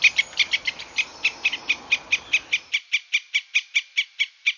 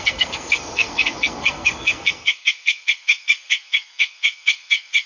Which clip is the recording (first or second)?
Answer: first